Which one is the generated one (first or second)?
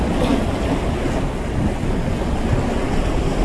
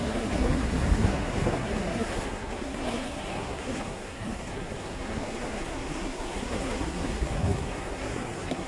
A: second